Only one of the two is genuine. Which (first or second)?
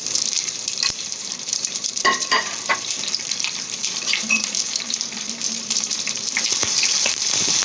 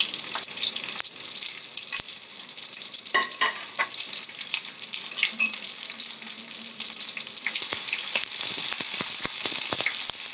second